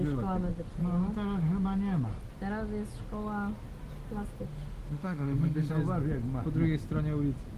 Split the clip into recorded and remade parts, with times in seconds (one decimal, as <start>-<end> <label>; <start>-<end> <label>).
0.0-4.5 recorded; 4.5-5.7 remade; 5.7-7.6 recorded